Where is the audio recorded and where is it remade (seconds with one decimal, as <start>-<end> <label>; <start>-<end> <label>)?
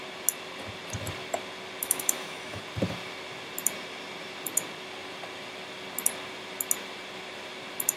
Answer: 0.0-1.8 recorded; 1.8-2.6 remade; 2.6-8.0 recorded